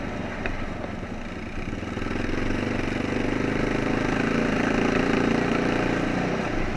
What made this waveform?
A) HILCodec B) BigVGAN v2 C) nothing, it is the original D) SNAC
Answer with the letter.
C